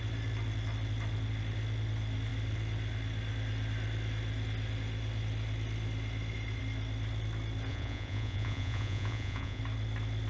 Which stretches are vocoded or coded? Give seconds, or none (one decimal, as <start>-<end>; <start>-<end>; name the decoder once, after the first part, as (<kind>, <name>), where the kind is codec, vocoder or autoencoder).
7.7-9.6 (vocoder, Vocos)